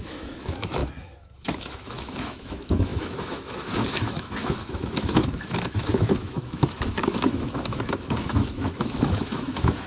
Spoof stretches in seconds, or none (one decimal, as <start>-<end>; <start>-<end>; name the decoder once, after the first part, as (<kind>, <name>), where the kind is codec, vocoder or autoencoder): 0.0-9.9 (autoencoder, DAC-VAE)